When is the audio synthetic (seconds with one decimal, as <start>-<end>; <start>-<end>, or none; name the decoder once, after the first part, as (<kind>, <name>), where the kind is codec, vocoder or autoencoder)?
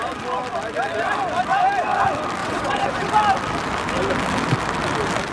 2.4-3.1 (vocoder, WaveNeXt)